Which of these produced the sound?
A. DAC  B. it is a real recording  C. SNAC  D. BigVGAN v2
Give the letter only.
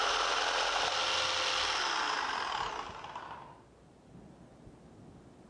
B